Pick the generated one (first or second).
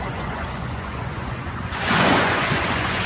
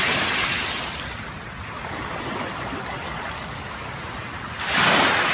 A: first